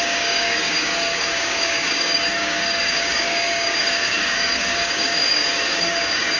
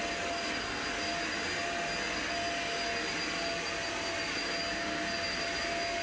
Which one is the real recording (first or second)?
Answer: second